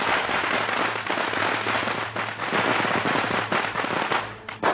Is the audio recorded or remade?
recorded